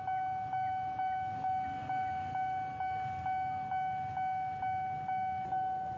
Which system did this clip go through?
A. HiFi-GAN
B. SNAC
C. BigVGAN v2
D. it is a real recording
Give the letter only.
D